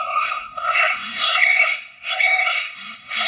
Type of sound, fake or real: fake